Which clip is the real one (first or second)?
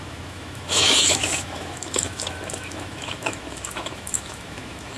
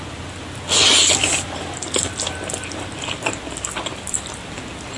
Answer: second